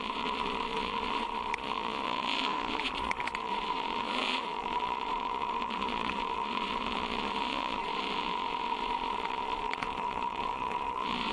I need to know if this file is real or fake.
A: fake